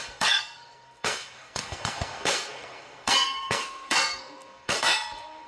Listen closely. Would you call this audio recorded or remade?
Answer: remade